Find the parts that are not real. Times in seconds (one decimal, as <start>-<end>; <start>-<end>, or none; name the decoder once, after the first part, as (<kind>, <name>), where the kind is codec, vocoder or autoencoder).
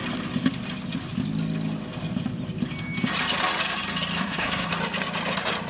4.2-4.7 (codec, SNAC)